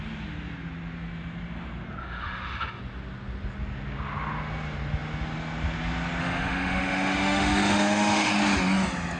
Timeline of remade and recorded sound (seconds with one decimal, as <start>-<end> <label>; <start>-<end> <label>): 0.0-2.0 recorded; 2.0-2.8 remade; 2.8-6.2 recorded; 6.2-8.3 remade; 8.3-9.2 recorded